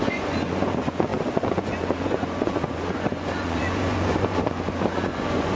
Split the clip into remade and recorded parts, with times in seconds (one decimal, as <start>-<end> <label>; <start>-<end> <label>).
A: 0.0-5.5 remade

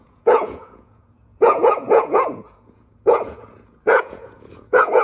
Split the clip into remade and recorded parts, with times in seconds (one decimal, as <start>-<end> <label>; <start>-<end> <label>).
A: 0.0-5.0 remade

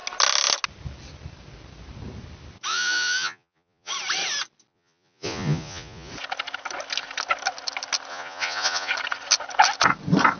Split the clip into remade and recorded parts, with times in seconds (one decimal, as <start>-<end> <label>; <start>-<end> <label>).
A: 0.0-2.7 recorded; 2.7-3.9 remade; 3.9-4.7 recorded; 4.7-6.1 remade; 6.1-8.1 recorded; 8.1-8.9 remade; 8.9-10.4 recorded

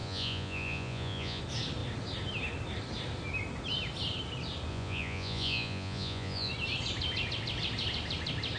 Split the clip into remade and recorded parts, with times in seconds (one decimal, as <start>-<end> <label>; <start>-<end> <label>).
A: 0.0-1.4 remade; 1.4-4.7 recorded; 4.7-6.5 remade; 6.5-8.6 recorded